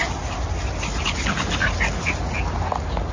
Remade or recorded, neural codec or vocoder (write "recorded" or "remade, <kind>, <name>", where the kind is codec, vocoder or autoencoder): recorded